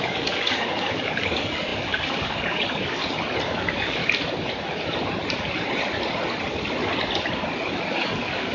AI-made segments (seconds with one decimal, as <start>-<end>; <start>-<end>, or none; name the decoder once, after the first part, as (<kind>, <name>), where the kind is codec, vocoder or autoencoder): 0.0-3.0 (codec, DAC); 3.5-4.0; 7.9-8.5